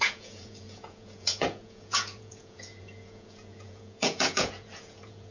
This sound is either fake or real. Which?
fake